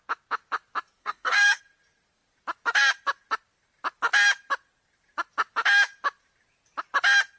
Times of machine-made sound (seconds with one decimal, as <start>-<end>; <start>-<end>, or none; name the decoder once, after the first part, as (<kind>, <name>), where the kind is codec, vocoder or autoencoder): 1.0-1.6 (codec, SNAC)